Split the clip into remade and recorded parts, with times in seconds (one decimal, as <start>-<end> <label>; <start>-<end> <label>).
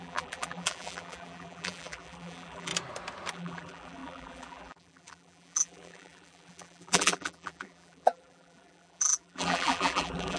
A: 0.0-2.7 remade; 2.7-3.3 recorded; 3.3-10.4 remade